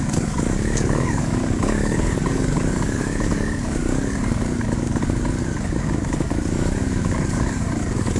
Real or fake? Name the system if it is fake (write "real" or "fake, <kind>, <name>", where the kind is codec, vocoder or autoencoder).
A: fake, codec, DAC